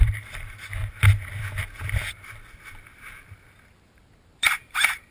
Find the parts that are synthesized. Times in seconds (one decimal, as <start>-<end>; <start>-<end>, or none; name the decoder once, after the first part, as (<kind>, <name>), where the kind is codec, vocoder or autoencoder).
0.0-0.8 (vocoder, BigVGAN v2); 3.7-5.1